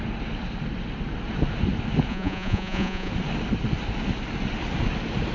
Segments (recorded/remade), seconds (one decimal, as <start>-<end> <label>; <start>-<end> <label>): 0.0-2.1 recorded; 2.1-3.1 remade; 3.1-5.3 recorded